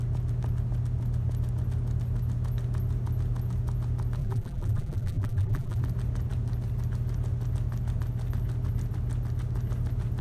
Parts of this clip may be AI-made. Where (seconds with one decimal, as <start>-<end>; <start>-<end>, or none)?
4.2-5.8